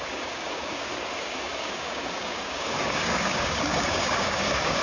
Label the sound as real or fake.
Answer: fake